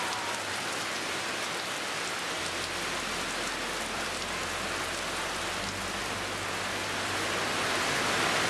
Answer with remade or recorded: recorded